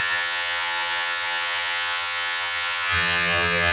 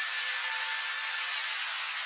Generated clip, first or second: first